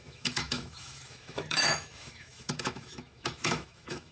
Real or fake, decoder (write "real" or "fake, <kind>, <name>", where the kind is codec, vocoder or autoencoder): fake, autoencoder, DAC-VAE